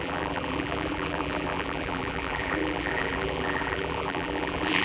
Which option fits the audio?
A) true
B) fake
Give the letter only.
B